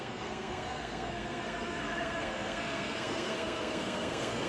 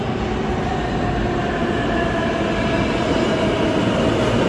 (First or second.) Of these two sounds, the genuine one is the second